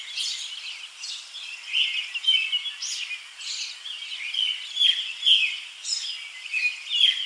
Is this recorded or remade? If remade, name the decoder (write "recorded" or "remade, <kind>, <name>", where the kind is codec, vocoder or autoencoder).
recorded